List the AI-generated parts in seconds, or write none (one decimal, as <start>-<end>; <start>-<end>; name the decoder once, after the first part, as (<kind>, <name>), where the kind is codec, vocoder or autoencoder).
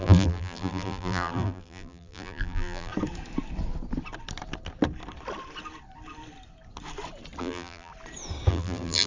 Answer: 0.0-2.9 (vocoder, BigVGAN v2); 7.4-7.9; 8.5-9.1